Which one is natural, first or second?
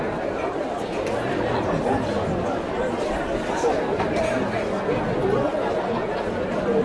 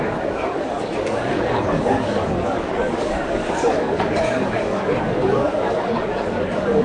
first